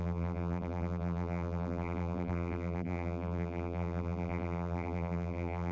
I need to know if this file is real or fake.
fake